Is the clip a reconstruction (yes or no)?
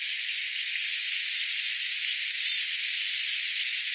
no